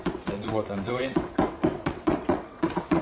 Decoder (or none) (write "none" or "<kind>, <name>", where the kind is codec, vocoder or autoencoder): vocoder, WaveNeXt